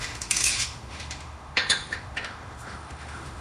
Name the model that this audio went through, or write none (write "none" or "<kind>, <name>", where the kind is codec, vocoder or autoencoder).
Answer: autoencoder, DAC-VAE